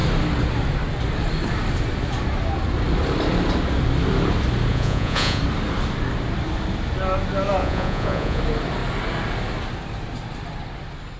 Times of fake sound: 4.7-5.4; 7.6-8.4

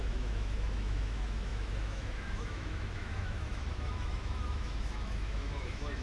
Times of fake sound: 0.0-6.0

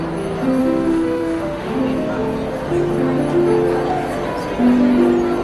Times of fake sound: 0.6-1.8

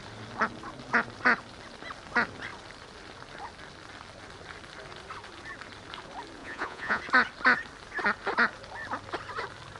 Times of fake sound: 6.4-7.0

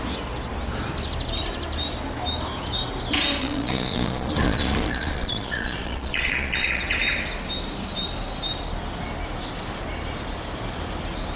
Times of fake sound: 3.4-6.8

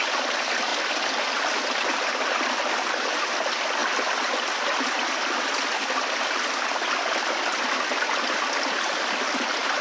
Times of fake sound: none